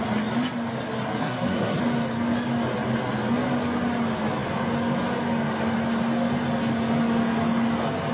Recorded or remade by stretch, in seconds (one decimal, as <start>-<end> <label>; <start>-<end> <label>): 0.0-1.2 recorded; 1.2-1.8 remade; 1.8-8.1 recorded